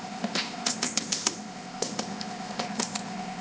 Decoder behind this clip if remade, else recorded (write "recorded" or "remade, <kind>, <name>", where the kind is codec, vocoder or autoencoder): remade, codec, ZipCodec